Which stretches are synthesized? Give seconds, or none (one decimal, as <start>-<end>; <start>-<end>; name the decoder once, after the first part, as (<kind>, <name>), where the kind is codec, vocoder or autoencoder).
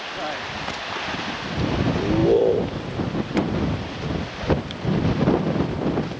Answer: none